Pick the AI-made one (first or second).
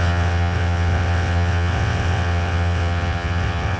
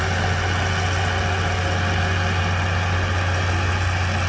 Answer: first